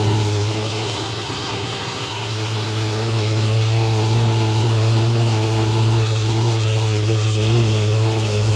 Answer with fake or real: fake